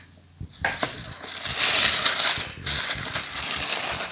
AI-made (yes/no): no